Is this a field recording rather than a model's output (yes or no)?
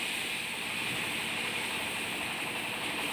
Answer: no